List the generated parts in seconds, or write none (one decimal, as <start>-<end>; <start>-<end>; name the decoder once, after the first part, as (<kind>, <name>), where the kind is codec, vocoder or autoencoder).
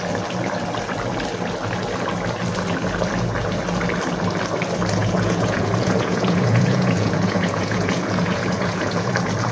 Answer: 5.0-9.1 (vocoder, Vocos)